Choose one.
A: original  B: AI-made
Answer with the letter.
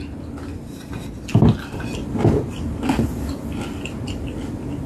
A